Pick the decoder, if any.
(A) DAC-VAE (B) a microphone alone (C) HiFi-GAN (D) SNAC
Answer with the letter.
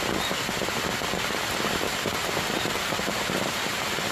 B